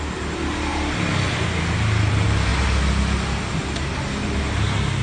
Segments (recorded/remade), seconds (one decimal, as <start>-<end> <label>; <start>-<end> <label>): 0.0-5.0 recorded